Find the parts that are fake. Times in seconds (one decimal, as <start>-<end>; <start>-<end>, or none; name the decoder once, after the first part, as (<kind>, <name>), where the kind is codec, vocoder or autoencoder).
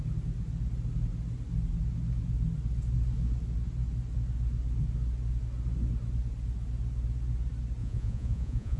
7.8-8.8 (vocoder, Vocos)